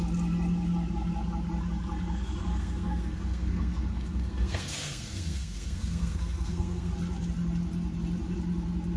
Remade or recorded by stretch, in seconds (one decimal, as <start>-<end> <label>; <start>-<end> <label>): 0.0-2.5 recorded; 2.5-6.9 remade; 6.9-9.0 recorded

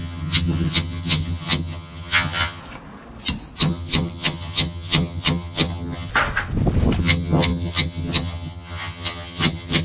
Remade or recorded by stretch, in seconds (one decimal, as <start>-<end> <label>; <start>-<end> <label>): 0.0-2.6 remade; 2.6-3.6 recorded; 3.6-6.1 remade; 6.1-7.0 recorded; 7.0-9.8 remade

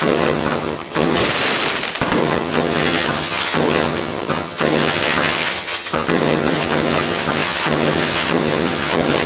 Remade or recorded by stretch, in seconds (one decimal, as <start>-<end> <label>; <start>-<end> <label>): 0.0-1.2 remade; 1.2-2.2 recorded; 2.2-9.3 remade